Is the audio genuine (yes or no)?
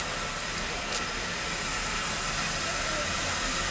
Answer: yes